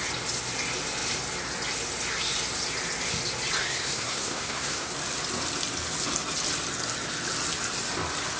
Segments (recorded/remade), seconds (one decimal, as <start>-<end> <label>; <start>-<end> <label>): 0.0-3.6 recorded; 3.6-4.9 remade; 4.9-8.4 recorded